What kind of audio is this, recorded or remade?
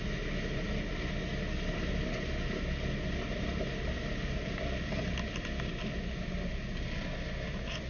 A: recorded